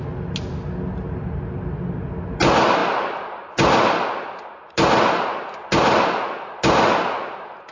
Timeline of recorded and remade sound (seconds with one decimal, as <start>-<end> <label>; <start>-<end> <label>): 0.0-7.7 recorded